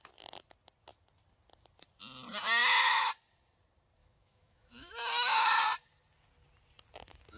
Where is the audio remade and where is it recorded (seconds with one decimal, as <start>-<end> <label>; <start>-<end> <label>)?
0.0-2.6 recorded; 2.6-3.1 remade; 3.1-4.0 recorded; 4.0-5.6 remade; 5.6-7.4 recorded